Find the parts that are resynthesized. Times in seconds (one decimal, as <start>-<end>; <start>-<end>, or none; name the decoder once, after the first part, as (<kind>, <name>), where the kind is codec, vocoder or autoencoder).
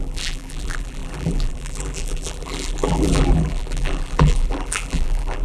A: 0.0-5.4 (vocoder, BigVGAN v2)